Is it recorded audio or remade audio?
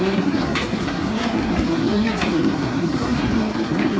remade